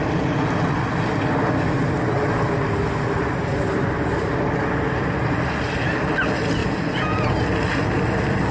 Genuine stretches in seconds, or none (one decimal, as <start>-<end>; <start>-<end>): 0.0-6.6; 7.3-8.5